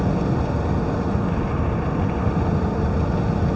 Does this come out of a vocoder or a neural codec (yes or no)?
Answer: no